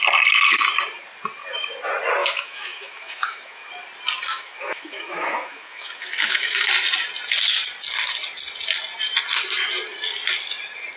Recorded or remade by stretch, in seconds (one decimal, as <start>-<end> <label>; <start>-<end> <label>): 0.0-2.2 recorded; 2.2-3.7 remade; 3.7-4.3 recorded; 4.3-6.7 remade; 6.7-11.0 recorded